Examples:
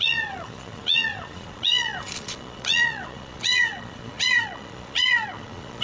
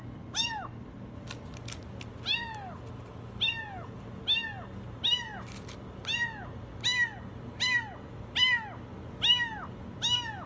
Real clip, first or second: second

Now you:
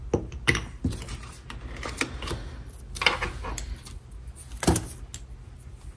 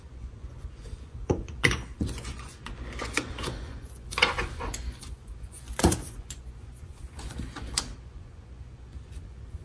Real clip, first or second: first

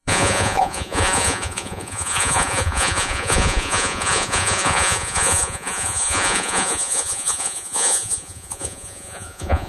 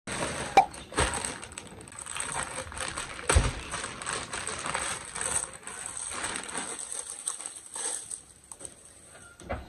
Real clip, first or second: second